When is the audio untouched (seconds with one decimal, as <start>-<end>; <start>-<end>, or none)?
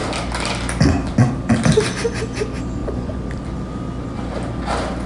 0.0-2.8; 3.3-5.1